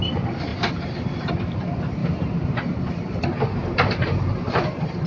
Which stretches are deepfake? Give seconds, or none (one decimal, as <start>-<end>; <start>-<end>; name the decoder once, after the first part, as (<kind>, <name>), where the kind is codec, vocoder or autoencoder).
0.5-1.3 (vocoder, BigVGAN v2); 2.0-4.6